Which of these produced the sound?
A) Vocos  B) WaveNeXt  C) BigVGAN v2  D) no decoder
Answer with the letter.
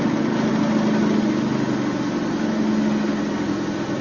D